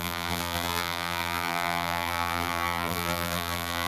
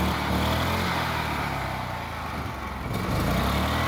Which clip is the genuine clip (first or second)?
second